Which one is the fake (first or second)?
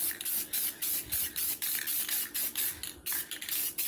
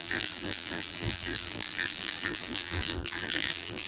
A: second